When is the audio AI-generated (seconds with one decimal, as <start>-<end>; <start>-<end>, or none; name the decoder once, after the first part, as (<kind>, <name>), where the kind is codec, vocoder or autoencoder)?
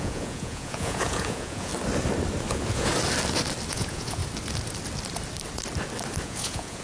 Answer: 0.0-1.7 (vocoder, Vocos); 2.5-2.9; 3.7-4.2; 6.2-6.8